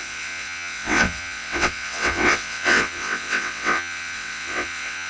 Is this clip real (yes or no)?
no